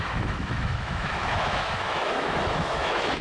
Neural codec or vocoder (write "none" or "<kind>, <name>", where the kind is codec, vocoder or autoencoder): autoencoder, DAC-VAE